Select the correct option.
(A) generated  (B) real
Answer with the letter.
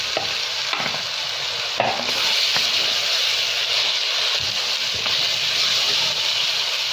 B